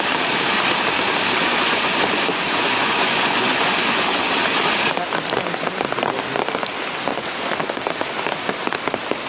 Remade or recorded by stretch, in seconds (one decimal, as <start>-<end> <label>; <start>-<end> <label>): 0.0-1.4 recorded; 1.4-4.3 remade; 4.3-7.1 recorded; 7.1-7.8 remade; 7.8-9.3 recorded